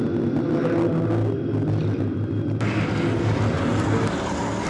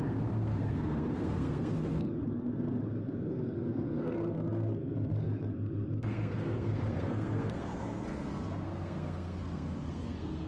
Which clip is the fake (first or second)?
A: second